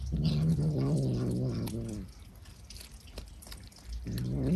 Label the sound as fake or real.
real